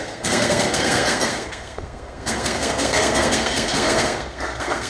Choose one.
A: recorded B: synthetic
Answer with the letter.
B